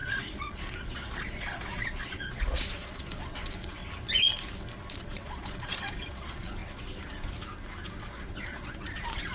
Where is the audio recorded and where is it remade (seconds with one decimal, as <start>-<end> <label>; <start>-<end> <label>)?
0.0-3.8 remade; 3.8-4.9 recorded; 4.9-6.6 remade; 6.6-8.0 recorded; 8.0-9.3 remade